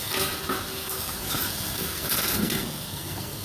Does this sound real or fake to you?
fake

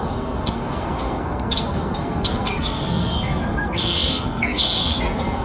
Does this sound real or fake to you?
fake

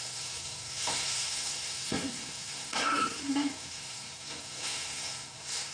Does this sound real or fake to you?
fake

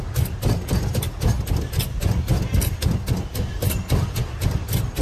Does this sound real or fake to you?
real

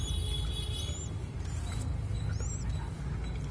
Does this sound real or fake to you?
real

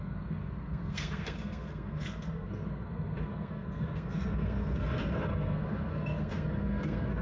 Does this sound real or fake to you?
fake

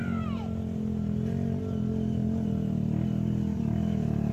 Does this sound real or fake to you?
real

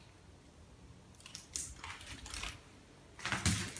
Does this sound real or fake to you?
real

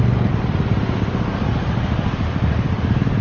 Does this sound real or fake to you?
real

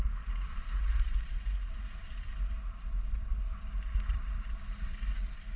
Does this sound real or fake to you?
real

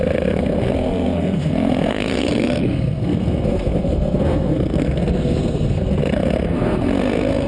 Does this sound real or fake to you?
fake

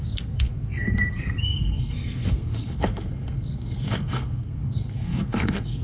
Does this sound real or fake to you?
fake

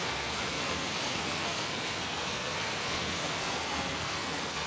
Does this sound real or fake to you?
fake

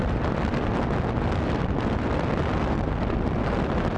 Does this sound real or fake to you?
real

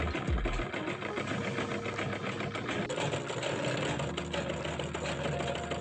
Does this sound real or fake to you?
real